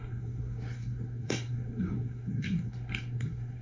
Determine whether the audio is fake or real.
fake